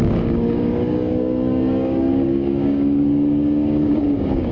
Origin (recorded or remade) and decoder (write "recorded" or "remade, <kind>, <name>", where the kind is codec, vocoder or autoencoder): remade, codec, DAC